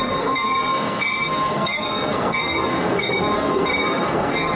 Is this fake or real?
fake